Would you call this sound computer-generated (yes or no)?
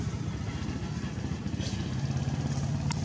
no